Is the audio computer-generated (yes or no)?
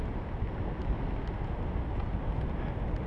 no